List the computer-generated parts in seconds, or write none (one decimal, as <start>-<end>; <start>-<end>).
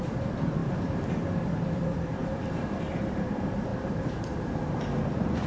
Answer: 0.0-5.5